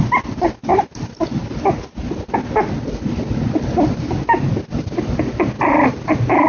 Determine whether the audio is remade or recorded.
recorded